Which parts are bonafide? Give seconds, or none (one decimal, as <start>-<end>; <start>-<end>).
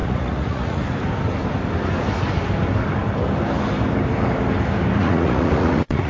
0.8-5.0